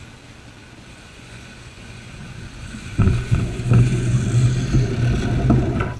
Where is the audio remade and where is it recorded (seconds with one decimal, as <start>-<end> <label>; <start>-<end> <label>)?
0.0-0.6 recorded; 0.6-4.2 remade; 4.2-6.0 recorded